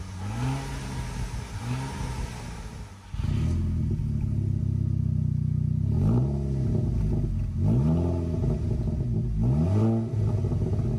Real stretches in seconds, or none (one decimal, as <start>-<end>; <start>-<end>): 0.0-11.0